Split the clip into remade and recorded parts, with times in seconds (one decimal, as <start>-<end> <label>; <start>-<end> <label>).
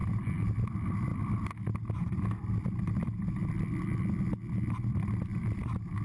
0.0-5.3 recorded; 5.3-6.0 remade